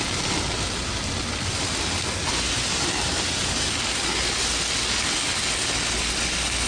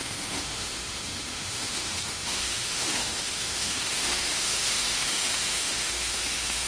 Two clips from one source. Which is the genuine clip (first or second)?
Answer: first